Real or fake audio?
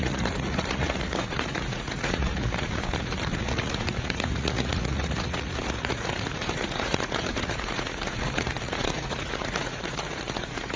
fake